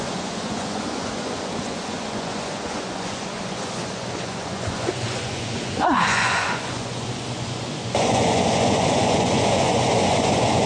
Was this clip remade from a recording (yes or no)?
yes